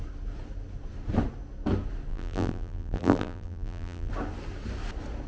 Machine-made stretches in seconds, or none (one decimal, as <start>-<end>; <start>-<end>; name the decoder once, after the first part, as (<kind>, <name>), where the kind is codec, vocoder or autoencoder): 2.1-4.1 (vocoder, BigVGAN v2)